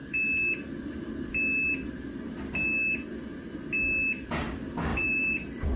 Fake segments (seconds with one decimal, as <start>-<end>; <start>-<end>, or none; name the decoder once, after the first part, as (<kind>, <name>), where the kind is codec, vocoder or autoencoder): 4.9-5.8 (vocoder, BigVGAN v2)